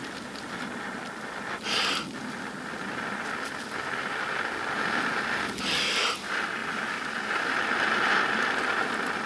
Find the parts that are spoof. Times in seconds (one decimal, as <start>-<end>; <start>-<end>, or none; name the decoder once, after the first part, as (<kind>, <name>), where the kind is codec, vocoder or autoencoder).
none